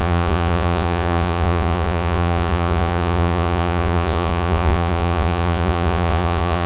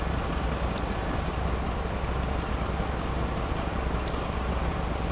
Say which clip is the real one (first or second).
second